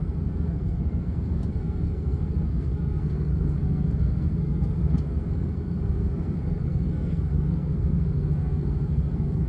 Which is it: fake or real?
fake